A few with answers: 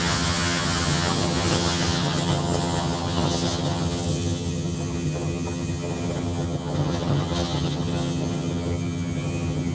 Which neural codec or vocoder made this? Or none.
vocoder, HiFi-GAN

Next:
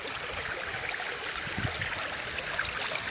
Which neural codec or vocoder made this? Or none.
none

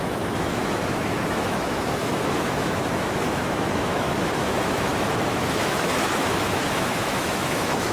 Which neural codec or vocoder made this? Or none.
autoencoder, DAC-VAE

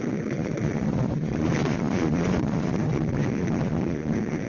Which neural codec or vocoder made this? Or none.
vocoder, Vocos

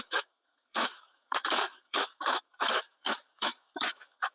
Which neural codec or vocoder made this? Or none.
autoencoder, DAC-VAE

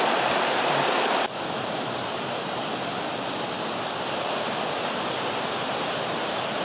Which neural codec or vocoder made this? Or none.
none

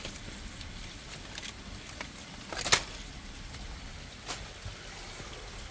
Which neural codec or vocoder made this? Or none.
none